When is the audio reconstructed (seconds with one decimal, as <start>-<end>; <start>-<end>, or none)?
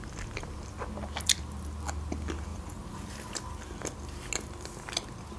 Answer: 2.5-3.7